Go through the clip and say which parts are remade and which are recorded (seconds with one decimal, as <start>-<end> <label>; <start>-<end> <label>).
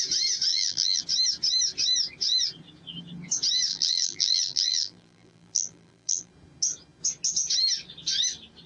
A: 0.0-0.5 recorded; 0.5-1.0 remade; 1.0-3.7 recorded; 3.7-6.3 remade; 6.3-8.7 recorded